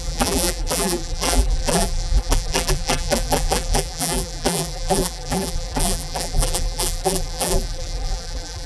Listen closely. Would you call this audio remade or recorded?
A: remade